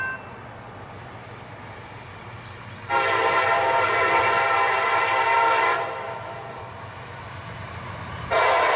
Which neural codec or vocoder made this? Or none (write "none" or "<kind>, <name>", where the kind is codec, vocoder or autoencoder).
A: vocoder, BigVGAN v2